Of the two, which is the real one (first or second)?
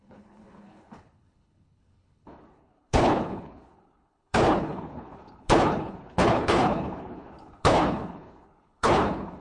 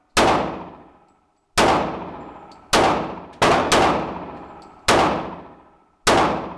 second